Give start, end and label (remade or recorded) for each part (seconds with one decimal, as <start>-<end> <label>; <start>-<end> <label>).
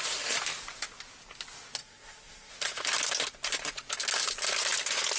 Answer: 0.0-1.8 recorded; 1.8-2.5 remade; 2.5-5.2 recorded